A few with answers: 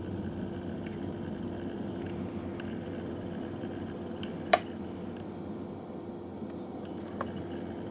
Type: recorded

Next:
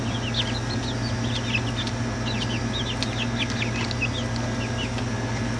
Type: recorded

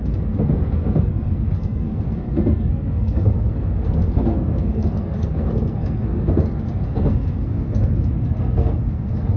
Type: remade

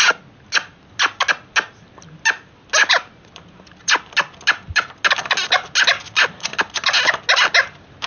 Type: recorded